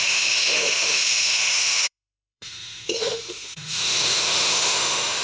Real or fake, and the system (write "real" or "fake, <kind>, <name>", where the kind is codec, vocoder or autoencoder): fake, autoencoder, DAC-VAE